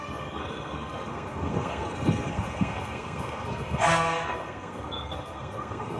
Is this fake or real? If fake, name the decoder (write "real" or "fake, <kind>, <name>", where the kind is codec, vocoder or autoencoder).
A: fake, codec, SNAC